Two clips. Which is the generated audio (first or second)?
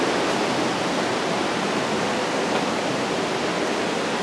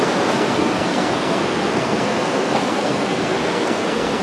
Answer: second